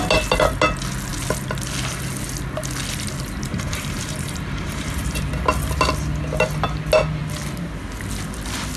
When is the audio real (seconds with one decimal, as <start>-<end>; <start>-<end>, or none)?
0.0-3.5; 5.3-8.8